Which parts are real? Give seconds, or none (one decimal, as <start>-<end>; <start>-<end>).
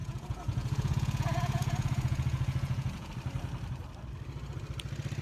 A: 3.1-5.2